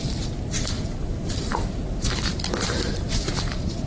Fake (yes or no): yes